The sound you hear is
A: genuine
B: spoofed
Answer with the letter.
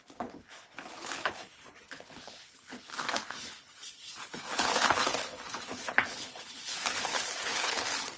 B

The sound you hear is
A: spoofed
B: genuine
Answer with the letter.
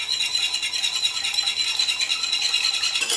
B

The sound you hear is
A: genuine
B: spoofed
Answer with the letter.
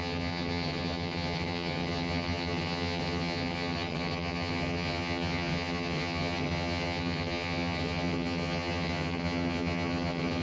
B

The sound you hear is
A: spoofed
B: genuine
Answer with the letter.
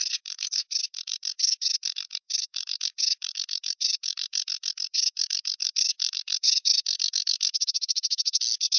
A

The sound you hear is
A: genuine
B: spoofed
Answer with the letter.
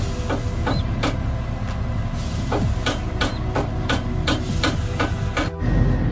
A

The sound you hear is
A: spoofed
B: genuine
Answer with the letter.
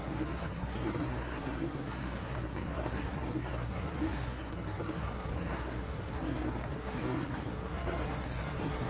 A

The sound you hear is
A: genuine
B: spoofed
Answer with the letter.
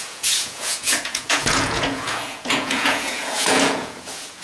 B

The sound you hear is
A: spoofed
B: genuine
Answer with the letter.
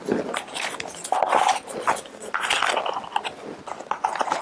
B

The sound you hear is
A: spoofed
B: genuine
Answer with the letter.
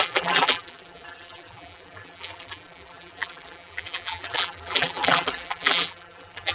A